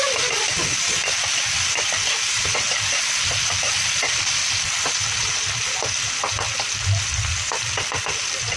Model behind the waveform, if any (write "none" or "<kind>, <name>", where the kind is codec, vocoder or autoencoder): none